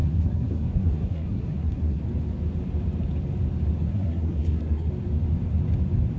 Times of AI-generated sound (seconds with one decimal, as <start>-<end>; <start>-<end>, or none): 0.0-2.0; 3.9-4.9